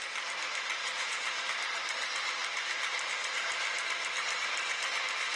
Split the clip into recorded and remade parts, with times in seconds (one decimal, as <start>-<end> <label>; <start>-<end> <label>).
0.0-0.8 recorded; 0.8-1.4 remade; 1.4-5.4 recorded